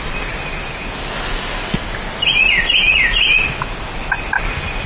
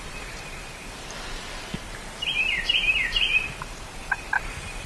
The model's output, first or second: second